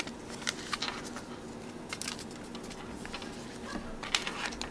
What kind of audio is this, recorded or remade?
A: recorded